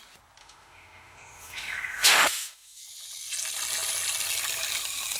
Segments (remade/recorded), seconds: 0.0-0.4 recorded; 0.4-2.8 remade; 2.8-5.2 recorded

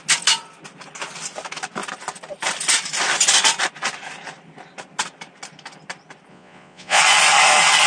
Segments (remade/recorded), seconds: 0.0-6.3 recorded; 6.3-7.0 remade; 7.0-7.9 recorded

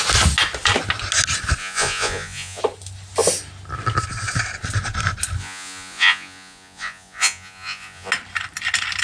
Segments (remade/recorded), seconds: 0.0-1.6 recorded; 1.6-2.6 remade; 2.6-5.4 recorded; 5.4-8.1 remade; 8.1-9.0 recorded

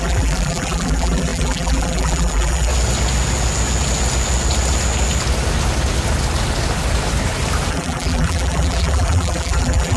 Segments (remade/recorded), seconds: 0.0-2.7 remade; 2.7-7.7 recorded; 7.7-10.0 remade